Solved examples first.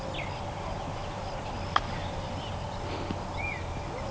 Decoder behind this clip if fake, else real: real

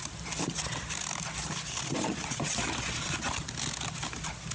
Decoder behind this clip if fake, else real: real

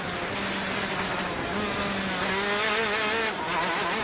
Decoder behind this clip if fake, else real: real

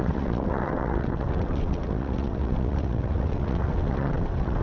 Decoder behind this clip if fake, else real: fake, vocoder, WaveNeXt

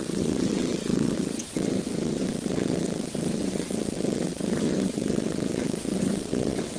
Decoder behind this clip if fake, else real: fake, vocoder, WaveNeXt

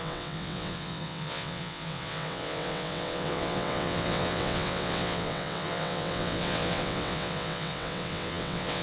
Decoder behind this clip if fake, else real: fake, vocoder, WaveNeXt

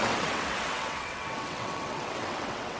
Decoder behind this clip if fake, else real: fake, vocoder, WaveNeXt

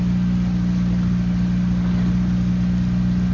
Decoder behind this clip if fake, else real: real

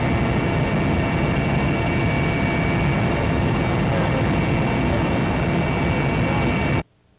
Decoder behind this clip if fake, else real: real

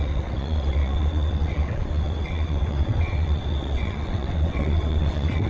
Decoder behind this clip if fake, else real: fake, vocoder, WaveNeXt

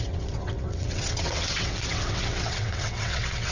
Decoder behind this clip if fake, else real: fake, vocoder, WaveNeXt